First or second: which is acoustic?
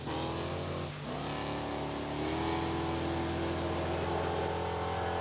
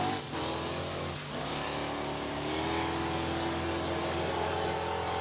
first